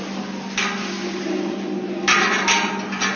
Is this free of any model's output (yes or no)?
yes